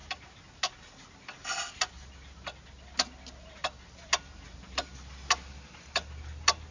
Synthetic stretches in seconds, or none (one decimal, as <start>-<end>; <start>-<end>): none